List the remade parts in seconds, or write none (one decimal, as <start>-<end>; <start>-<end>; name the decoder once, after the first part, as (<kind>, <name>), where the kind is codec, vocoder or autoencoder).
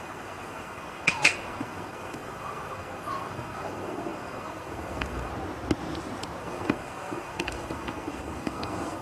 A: 0.0-5.3 (codec, SNAC); 6.4-9.0